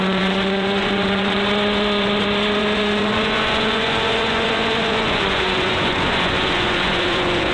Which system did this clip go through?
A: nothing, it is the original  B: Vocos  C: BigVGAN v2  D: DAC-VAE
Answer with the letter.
B